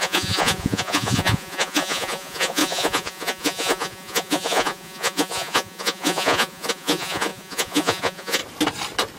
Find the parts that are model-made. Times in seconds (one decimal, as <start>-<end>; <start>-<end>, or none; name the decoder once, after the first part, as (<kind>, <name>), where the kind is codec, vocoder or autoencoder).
0.0-8.4 (vocoder, Vocos)